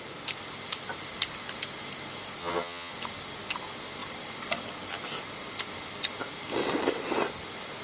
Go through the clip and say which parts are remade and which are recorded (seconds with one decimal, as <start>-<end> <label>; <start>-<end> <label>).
0.0-2.4 recorded; 2.4-2.9 remade; 2.9-7.8 recorded